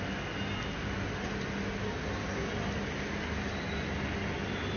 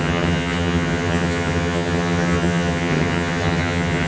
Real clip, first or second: first